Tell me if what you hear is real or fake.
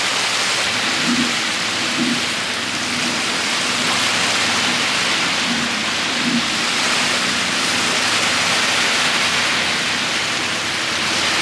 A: real